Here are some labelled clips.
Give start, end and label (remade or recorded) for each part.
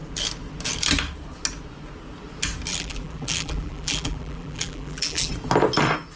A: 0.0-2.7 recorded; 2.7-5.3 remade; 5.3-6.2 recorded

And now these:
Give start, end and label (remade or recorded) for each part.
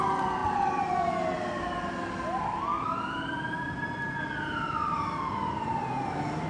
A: 0.0-2.7 recorded; 2.7-3.9 remade; 3.9-6.5 recorded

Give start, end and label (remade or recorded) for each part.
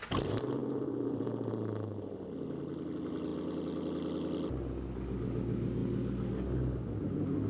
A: 0.0-0.6 recorded; 0.6-1.5 remade; 1.5-7.5 recorded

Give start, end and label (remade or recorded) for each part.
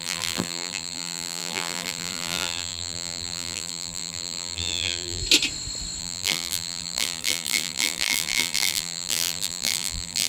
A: 0.0-5.2 remade; 5.2-6.0 recorded; 6.0-10.3 remade